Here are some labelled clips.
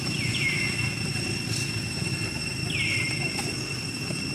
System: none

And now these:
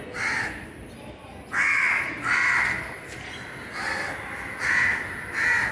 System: none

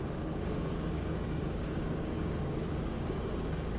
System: codec, DAC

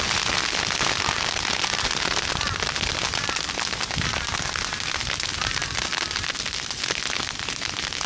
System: none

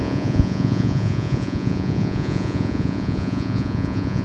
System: vocoder, Vocos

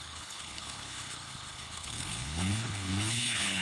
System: codec, HILCodec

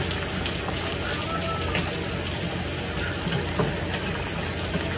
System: none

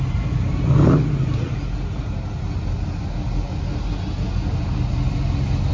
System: none